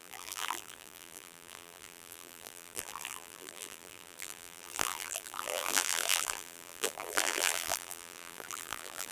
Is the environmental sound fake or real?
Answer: fake